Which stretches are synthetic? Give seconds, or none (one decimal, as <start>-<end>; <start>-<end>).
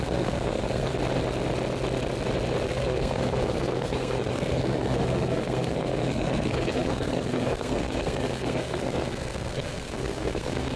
0.0-0.9; 2.7-10.8